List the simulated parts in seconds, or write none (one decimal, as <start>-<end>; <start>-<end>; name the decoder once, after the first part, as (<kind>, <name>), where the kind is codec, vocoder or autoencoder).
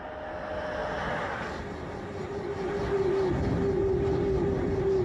none